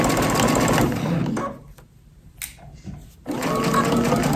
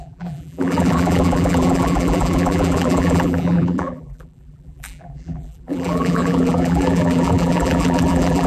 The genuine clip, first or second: first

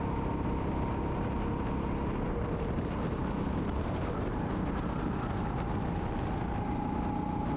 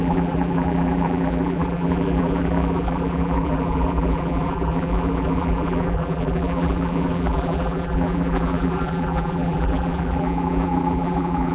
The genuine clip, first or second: first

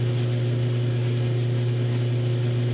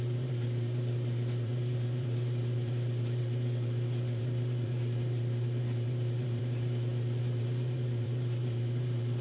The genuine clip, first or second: first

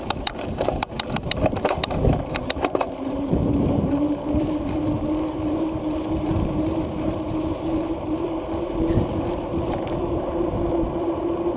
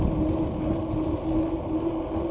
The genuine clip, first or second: second